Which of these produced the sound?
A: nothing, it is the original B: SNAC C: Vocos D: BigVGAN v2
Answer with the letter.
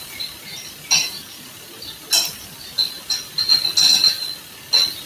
A